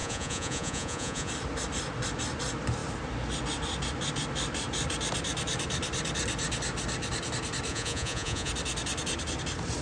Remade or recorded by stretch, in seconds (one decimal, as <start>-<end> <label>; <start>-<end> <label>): 0.0-1.3 remade; 1.3-7.7 recorded; 7.7-8.5 remade; 8.5-9.8 recorded